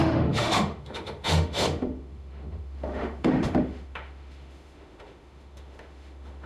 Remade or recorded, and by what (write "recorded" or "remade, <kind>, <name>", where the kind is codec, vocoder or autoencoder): remade, autoencoder, DAC-VAE